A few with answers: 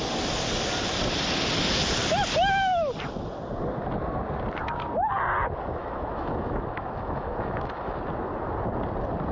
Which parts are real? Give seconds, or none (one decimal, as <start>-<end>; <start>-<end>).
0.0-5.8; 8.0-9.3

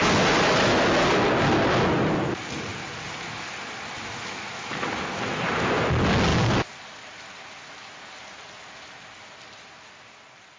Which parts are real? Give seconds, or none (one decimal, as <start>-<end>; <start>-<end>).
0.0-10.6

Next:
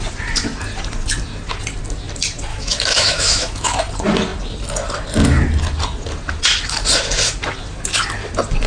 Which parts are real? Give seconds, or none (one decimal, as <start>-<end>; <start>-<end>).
0.0-2.5; 3.8-8.7

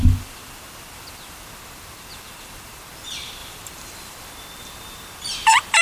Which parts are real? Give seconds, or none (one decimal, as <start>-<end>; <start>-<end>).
none

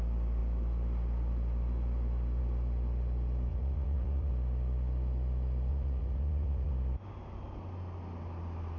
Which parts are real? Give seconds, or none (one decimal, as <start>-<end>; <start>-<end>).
0.0-3.5; 4.3-5.7; 6.7-8.8